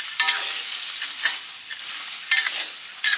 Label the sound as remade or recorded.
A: recorded